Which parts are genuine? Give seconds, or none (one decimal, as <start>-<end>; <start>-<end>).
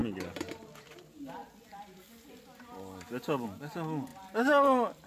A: 3.1-4.1